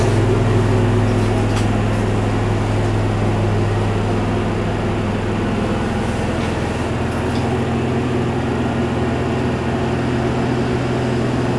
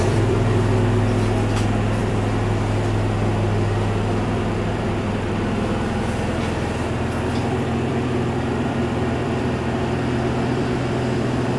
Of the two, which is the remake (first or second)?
second